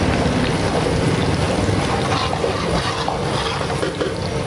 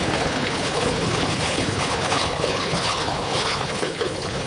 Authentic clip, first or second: first